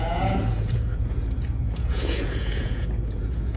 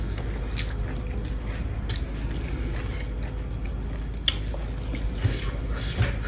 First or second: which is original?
second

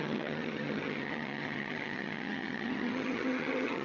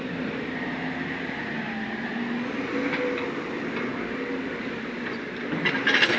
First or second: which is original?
second